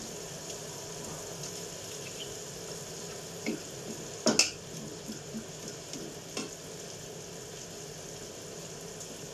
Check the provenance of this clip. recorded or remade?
recorded